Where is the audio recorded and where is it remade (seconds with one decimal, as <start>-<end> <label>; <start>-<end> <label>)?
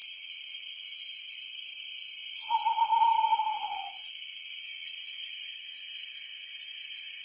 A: 0.0-1.5 remade; 1.5-2.2 recorded; 2.2-6.5 remade; 6.5-7.2 recorded